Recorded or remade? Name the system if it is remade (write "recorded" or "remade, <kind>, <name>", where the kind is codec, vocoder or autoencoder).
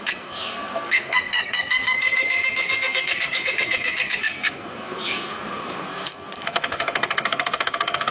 remade, codec, SNAC